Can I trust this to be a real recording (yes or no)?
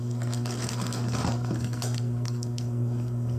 no